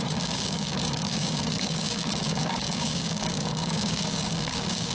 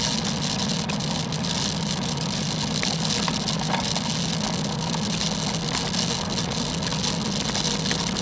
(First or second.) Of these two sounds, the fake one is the first